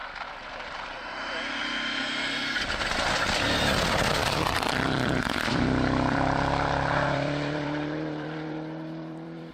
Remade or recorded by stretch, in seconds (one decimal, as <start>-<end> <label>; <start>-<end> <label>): 0.0-4.8 recorded; 4.8-9.5 remade

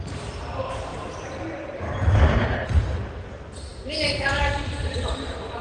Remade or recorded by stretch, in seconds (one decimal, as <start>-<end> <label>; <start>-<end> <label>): 0.0-5.6 recorded

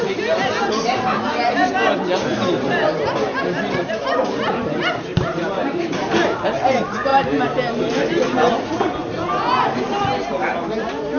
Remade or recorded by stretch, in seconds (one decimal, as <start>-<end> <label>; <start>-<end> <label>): 0.0-3.8 recorded; 3.8-5.9 remade; 5.9-11.2 recorded

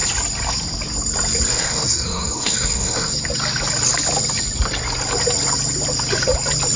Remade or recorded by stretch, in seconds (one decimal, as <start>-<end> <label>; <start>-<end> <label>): 0.0-1.5 recorded; 1.5-3.1 remade; 3.1-6.8 recorded

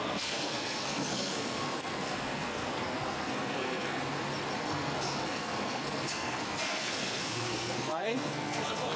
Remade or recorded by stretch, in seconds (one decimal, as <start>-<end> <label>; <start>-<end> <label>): 0.0-4.0 remade; 4.0-4.6 recorded; 4.6-9.0 remade